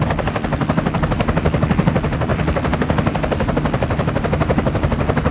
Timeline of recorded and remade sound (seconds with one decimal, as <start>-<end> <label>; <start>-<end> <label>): 0.0-5.3 recorded